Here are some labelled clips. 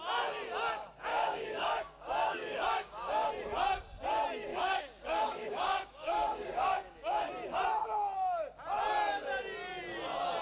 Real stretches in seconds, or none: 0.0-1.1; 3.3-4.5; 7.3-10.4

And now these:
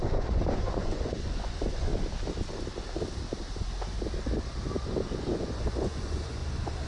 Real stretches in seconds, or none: 1.9-5.2; 6.4-6.9

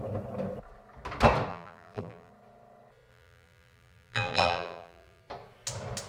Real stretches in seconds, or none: 0.0-1.5; 2.3-3.1; 5.2-6.1

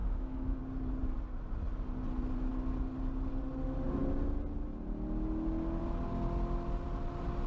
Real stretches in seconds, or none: 0.6-7.5

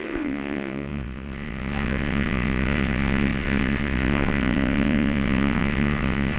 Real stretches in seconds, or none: none

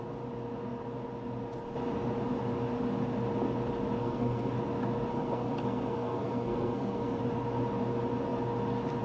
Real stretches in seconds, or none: 0.0-4.0; 4.5-5.1; 7.2-9.0

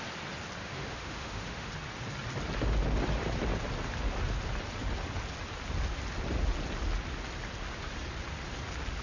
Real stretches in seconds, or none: 0.0-0.6; 1.7-9.0